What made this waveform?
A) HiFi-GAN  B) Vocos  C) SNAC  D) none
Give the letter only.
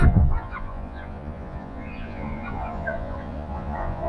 B